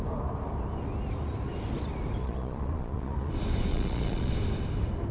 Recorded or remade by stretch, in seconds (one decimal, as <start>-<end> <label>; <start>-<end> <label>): 0.0-2.2 recorded; 2.2-3.3 remade; 3.3-3.7 recorded; 3.7-4.3 remade; 4.3-5.1 recorded

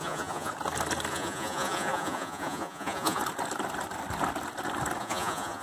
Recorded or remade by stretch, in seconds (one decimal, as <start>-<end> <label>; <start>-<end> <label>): 0.0-0.5 remade; 0.5-1.1 recorded; 1.1-3.2 remade; 3.2-5.0 recorded; 5.0-5.6 remade

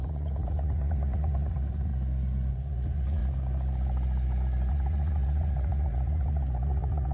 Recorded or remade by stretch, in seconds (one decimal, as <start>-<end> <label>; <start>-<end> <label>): 0.0-1.9 remade; 1.9-2.5 recorded; 2.5-3.2 remade; 3.2-4.7 recorded; 4.7-7.1 remade

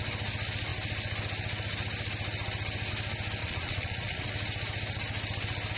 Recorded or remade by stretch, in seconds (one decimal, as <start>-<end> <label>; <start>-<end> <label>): 0.0-3.4 recorded; 3.4-4.3 remade; 4.3-5.8 recorded